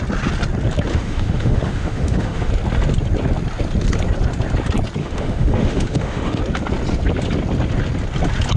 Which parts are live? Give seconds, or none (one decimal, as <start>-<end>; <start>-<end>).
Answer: 0.0-0.9; 2.5-5.0; 6.4-8.6